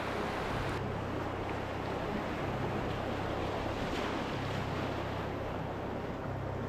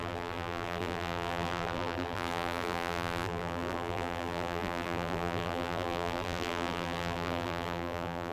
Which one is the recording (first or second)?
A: first